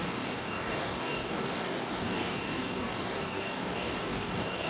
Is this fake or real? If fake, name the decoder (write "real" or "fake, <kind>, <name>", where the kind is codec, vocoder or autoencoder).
fake, codec, DAC